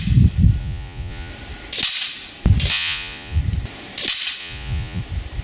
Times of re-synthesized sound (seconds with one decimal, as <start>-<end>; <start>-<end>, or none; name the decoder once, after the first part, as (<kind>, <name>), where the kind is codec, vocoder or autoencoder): 0.6-1.3 (vocoder, Vocos); 2.7-3.4; 4.4-5.0